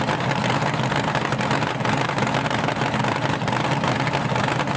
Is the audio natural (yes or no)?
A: yes